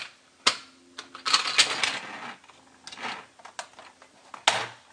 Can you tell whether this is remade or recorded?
recorded